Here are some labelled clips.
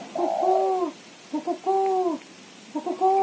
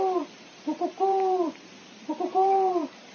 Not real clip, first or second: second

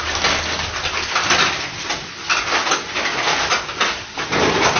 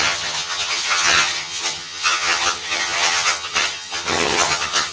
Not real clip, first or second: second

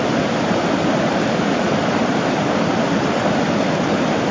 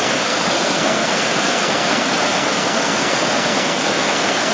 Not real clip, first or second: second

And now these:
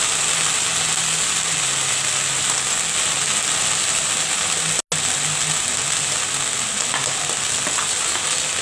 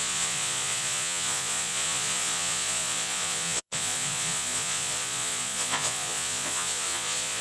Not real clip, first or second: second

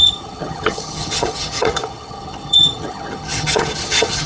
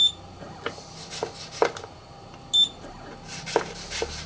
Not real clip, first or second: first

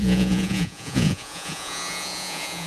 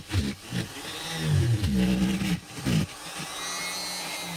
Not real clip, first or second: first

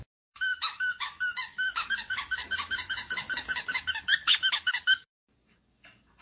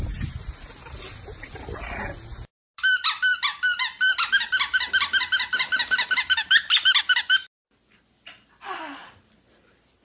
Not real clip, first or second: first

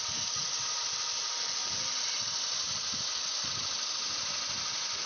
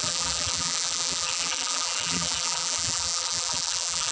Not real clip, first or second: second